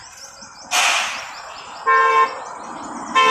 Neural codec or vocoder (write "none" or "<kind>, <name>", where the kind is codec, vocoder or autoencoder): none